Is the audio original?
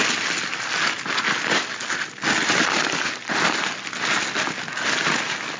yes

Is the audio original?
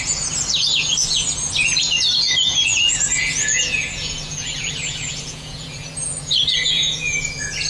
no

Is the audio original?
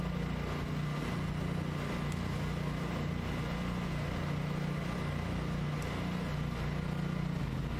yes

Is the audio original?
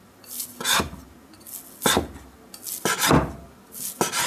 yes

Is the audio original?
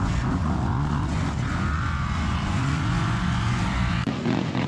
no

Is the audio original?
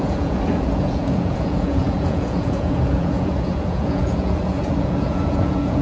no